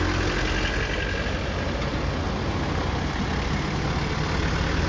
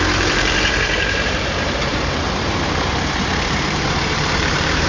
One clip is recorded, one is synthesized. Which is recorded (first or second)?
first